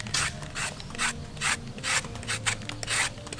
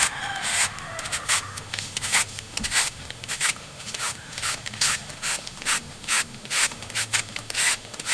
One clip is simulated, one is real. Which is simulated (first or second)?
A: second